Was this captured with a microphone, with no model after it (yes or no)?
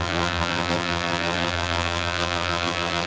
no